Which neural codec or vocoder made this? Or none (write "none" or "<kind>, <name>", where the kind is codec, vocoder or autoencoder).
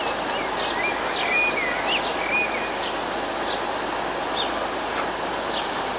none